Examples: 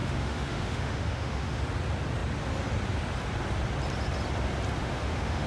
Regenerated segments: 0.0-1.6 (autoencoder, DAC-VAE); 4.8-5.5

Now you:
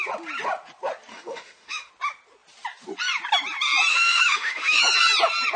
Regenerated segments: 1.1-1.9 (autoencoder, DAC-VAE); 3.9-4.8

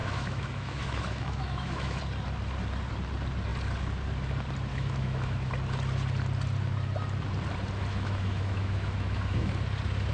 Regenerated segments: 0.0-2.0 (autoencoder, DAC-VAE); 4.7-5.5; 7.9-9.5

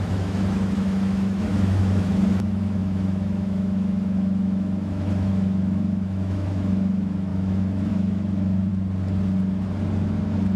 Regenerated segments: 0.0-8.7 (autoencoder, DAC-VAE)